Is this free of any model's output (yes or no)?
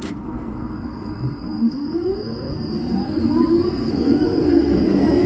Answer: no